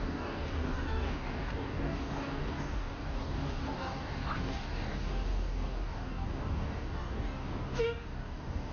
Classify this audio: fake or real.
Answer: fake